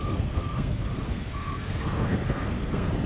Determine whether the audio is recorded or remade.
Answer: remade